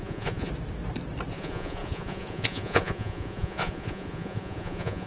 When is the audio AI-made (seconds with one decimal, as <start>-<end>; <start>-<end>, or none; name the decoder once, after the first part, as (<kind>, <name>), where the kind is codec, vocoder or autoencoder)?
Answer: 0.0-0.5 (vocoder, Vocos); 1.3-5.1